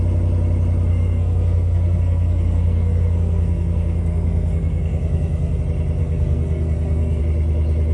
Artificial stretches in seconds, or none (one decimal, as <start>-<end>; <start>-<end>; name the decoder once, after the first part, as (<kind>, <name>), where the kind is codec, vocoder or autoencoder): 0.9-5.6 (codec, SNAC); 6.0-7.2